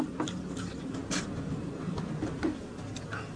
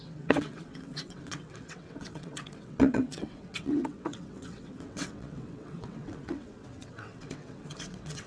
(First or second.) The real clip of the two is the first